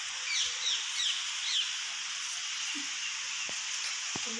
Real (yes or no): yes